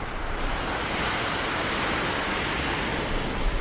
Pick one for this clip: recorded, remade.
recorded